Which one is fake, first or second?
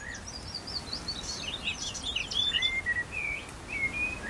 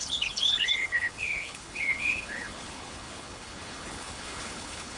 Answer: second